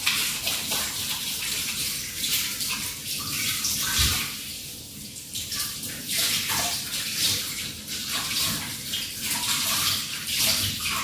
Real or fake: fake